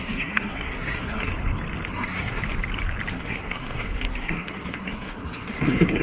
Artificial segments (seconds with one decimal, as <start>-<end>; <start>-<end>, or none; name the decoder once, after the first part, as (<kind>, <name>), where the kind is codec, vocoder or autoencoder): 0.0-1.3 (codec, SNAC); 1.9-2.4; 3.1-6.0